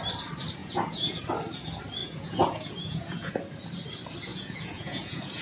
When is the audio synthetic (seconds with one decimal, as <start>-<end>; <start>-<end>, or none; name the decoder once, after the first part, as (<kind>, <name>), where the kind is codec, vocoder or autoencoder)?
0.6-1.2 (vocoder, Vocos); 2.0-3.3; 4.3-5.4